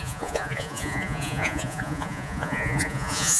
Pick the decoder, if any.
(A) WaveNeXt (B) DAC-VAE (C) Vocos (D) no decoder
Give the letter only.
C